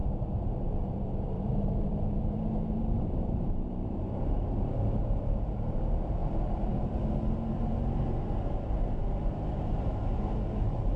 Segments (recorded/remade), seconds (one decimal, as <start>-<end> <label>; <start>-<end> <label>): 0.0-0.9 recorded; 0.9-6.2 remade; 6.2-6.7 recorded; 6.7-11.0 remade